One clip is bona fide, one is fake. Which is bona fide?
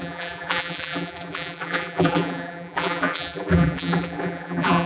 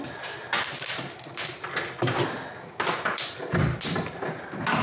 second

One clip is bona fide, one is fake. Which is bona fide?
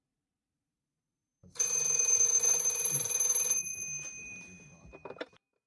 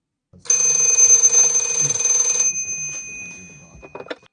second